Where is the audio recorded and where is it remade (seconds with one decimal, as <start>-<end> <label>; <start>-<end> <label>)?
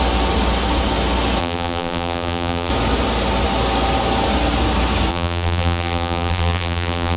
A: 0.0-1.4 recorded; 1.4-2.7 remade; 2.7-5.1 recorded; 5.1-7.2 remade